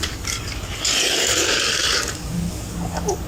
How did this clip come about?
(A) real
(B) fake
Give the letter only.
B